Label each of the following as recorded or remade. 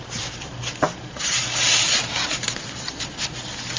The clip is remade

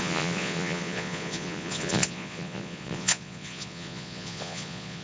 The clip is remade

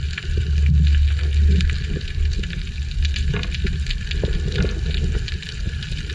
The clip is recorded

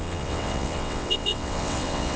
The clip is remade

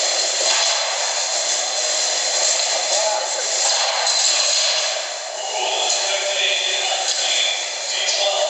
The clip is recorded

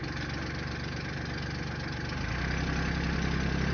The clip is recorded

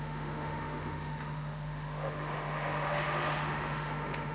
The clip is remade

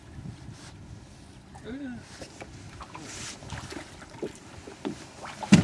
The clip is recorded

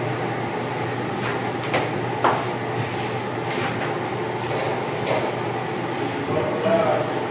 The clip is recorded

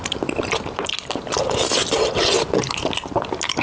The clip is recorded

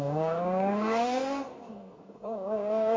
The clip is remade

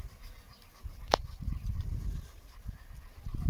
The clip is recorded